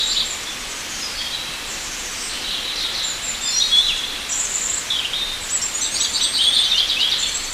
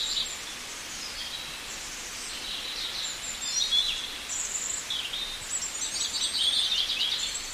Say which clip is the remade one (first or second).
first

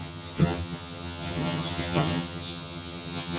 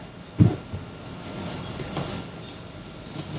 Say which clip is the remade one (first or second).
first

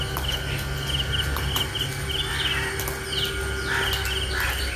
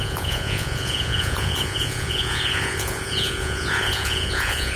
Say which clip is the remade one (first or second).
second